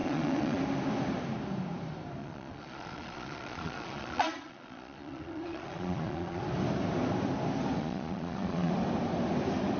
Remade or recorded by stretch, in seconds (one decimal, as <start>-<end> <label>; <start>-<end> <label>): 0.0-0.6 remade; 0.6-2.2 recorded; 2.2-6.4 remade; 6.4-7.8 recorded; 7.8-8.7 remade; 8.7-9.8 recorded